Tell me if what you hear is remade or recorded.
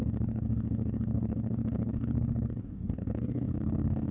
remade